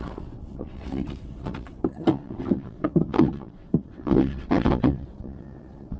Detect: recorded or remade remade